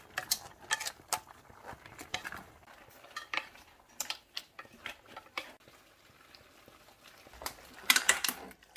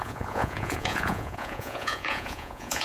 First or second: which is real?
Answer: first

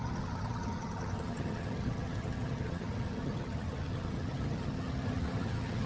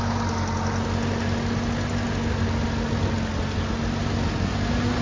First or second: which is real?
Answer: second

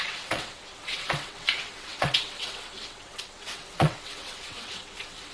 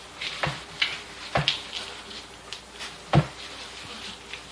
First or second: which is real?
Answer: second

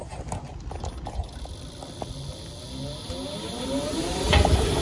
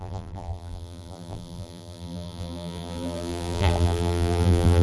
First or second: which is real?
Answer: first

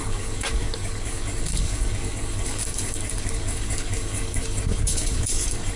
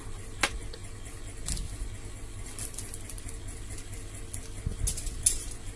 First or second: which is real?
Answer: second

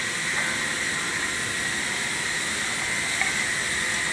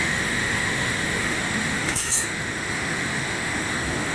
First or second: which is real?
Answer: first